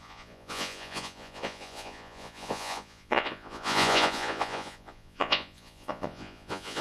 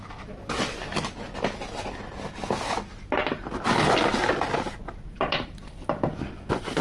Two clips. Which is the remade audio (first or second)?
first